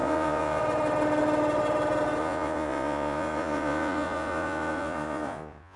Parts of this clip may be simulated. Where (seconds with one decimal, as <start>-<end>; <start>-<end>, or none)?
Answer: 0.0-0.6; 2.2-5.8